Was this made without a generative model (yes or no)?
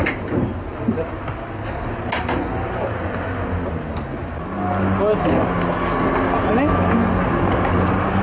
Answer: yes